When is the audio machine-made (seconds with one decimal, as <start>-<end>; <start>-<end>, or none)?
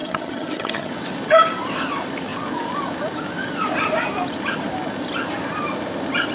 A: 0.0-0.9